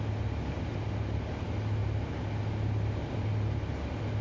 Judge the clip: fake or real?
real